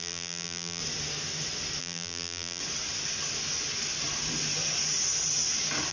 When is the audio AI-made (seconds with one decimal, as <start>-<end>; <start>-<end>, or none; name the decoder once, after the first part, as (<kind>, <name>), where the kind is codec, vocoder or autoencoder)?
0.0-0.8 (vocoder, BigVGAN v2); 1.8-2.6